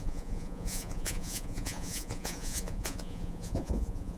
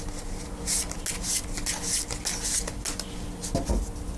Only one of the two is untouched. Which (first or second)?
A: second